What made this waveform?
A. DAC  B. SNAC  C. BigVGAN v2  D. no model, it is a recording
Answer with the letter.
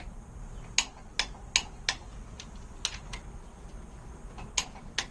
D